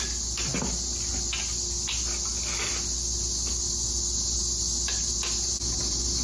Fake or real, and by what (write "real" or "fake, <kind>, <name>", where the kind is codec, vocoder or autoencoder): real